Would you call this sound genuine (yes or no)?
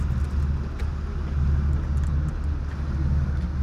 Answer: yes